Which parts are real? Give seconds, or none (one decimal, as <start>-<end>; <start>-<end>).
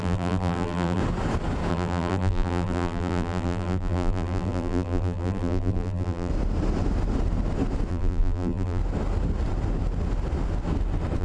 1.0-1.7; 6.3-7.9; 8.8-11.2